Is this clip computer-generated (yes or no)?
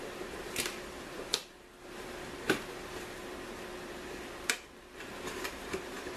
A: no